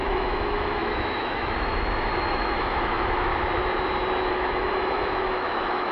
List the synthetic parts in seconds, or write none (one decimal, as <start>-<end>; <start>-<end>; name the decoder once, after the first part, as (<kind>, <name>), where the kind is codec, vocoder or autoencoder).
0.0-3.3 (autoencoder, DAC-VAE); 4.3-5.9